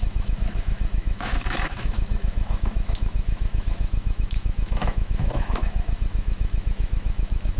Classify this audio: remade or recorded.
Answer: remade